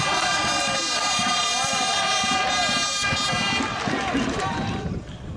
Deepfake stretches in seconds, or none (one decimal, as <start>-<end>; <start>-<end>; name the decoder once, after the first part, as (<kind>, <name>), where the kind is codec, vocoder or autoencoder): 0.0-3.0 (vocoder, BigVGAN v2); 3.9-5.4